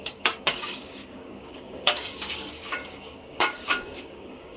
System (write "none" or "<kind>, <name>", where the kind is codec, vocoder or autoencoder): codec, DAC